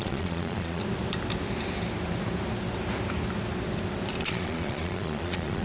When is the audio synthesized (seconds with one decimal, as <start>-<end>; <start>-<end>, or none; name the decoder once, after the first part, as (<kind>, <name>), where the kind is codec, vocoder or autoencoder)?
0.0-0.8 (vocoder, Vocos); 4.2-5.6

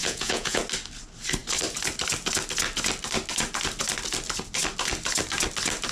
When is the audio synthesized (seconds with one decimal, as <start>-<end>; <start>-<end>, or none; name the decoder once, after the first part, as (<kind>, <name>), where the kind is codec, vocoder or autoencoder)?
0.0-0.6 (vocoder, Vocos)

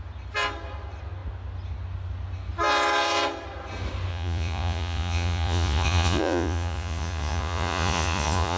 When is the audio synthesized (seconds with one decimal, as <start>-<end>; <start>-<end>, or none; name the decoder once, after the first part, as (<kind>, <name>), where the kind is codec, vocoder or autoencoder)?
4.1-8.6 (vocoder, Vocos)